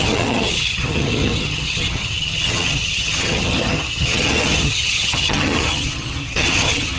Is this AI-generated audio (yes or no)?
yes